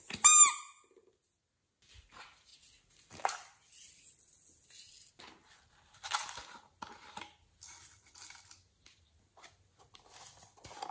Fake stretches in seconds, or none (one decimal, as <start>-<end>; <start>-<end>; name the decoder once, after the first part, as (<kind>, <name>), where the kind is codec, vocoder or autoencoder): none